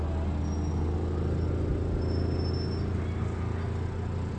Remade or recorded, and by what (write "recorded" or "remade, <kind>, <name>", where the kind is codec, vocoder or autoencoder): recorded